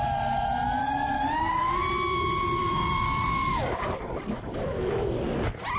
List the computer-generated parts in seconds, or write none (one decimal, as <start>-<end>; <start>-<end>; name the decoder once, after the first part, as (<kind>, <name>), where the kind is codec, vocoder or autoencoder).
0.8-1.8 (codec, DAC); 2.6-5.2